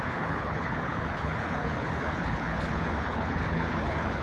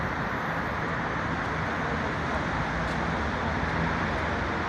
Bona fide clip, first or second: second